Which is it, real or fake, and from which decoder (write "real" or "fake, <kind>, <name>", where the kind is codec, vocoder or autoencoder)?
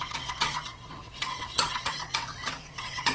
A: fake, vocoder, WaveNeXt